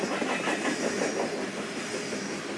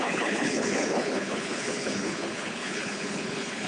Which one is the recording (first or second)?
first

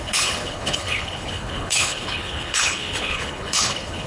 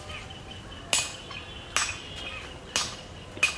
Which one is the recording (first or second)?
second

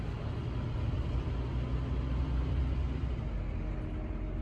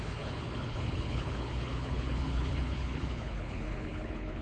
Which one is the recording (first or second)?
first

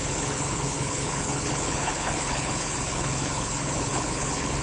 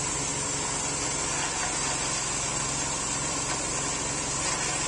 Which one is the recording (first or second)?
second